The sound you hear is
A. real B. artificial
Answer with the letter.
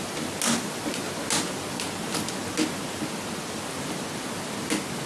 A